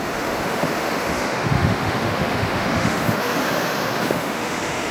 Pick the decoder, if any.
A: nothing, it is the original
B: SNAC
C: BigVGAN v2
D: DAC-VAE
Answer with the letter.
D